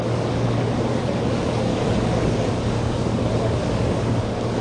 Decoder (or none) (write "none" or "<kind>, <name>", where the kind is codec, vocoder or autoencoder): codec, DAC